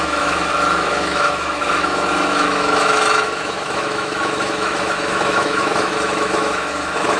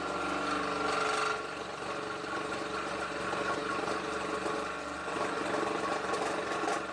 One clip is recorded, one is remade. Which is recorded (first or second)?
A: second